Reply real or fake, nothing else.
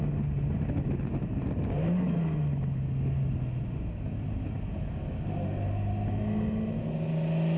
real